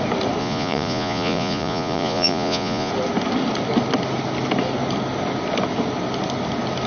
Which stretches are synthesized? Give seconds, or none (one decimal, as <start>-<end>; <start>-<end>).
0.4-2.9